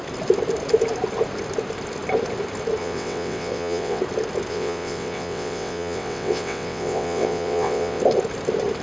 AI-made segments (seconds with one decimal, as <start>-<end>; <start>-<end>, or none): 2.8-4.0; 4.5-8.0